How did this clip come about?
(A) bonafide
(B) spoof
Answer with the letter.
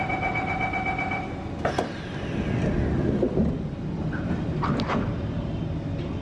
A